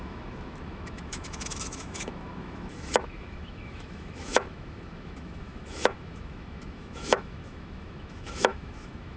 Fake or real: fake